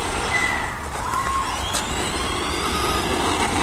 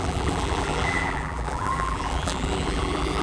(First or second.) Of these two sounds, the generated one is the second